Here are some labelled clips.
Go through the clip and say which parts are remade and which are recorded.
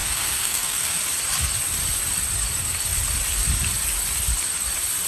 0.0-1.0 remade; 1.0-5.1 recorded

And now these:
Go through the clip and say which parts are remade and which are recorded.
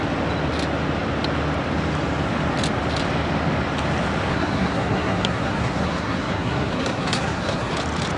0.0-4.3 recorded; 4.3-7.7 remade; 7.7-8.2 recorded